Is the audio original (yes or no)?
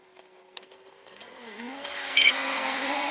no